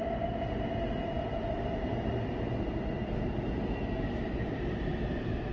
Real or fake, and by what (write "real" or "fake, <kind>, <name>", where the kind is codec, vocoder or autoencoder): real